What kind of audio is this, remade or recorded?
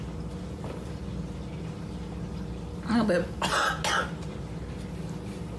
recorded